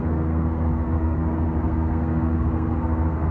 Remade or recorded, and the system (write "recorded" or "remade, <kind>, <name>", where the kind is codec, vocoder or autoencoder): remade, codec, SNAC